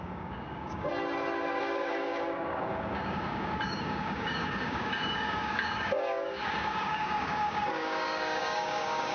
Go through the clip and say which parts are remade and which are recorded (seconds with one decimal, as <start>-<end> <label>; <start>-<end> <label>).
0.0-0.9 remade; 0.9-1.6 recorded; 1.6-9.1 remade